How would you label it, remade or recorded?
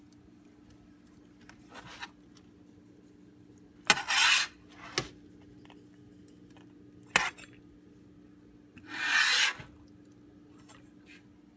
recorded